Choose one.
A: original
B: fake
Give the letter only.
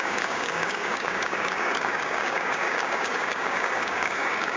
B